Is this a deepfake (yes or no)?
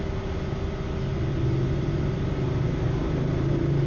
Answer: no